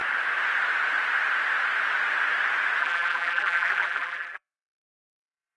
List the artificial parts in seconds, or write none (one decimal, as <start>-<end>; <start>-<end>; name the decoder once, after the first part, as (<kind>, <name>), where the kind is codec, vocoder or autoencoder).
2.8-5.6 (vocoder, BigVGAN v2)